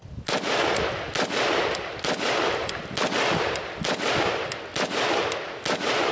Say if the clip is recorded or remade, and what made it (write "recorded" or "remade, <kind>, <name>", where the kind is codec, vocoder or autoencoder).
recorded